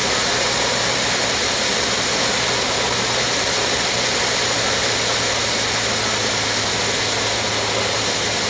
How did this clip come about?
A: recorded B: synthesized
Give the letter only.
A